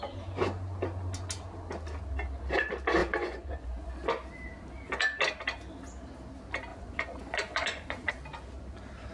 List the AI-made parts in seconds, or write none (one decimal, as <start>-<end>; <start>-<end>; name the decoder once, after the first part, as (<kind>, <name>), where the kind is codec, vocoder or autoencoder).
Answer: 3.0-3.9 (vocoder, Vocos); 6.7-8.1